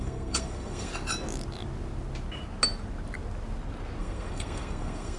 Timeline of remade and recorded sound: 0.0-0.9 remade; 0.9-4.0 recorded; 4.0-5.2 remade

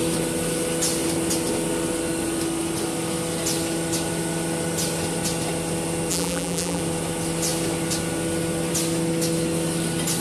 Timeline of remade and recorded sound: 0.0-6.1 recorded; 6.1-6.8 remade; 6.8-10.2 recorded

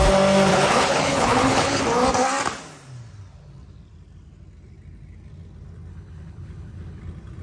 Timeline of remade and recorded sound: 0.0-0.5 recorded; 0.5-1.8 remade; 1.8-5.9 recorded; 5.9-7.0 remade; 7.0-7.4 recorded

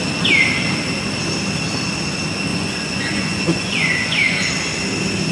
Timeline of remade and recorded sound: 0.0-2.5 recorded; 2.5-4.5 remade; 4.5-5.3 recorded

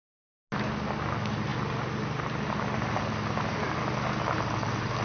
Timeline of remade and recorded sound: 0.0-5.0 recorded

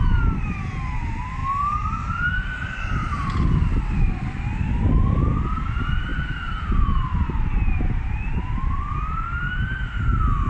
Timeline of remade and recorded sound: 0.0-10.5 recorded